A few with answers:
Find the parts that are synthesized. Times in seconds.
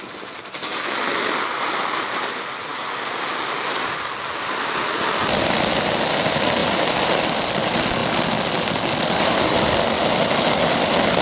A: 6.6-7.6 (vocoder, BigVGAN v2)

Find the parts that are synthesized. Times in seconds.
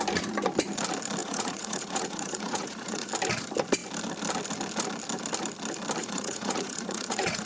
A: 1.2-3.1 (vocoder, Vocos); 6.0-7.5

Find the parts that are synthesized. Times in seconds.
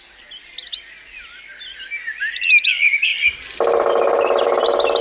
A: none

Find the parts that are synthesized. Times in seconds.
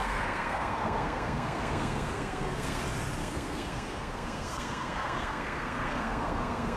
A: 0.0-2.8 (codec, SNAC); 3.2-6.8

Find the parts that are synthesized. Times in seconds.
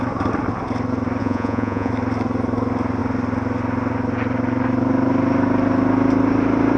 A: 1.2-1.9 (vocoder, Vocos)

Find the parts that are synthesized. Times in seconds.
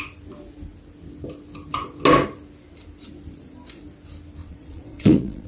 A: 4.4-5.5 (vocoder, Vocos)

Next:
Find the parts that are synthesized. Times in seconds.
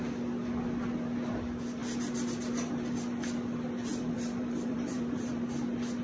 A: 3.9-5.4 (vocoder, BigVGAN v2)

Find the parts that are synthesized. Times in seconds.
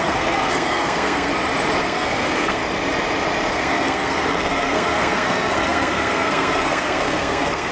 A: 0.0-1.3 (codec, SNAC); 1.8-2.6; 3.5-7.7